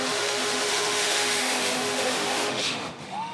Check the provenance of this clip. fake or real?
fake